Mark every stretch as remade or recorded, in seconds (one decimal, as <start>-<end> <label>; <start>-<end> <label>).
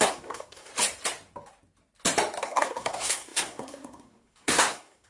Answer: 0.0-0.7 remade; 0.7-2.4 recorded; 2.4-5.1 remade